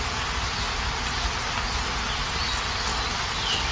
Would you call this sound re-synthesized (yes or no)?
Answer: no